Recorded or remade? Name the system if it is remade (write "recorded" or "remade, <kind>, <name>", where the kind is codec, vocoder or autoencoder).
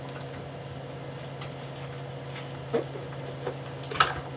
recorded